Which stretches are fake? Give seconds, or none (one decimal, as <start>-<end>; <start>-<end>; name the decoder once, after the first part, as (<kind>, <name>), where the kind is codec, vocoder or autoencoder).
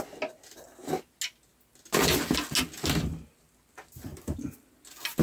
none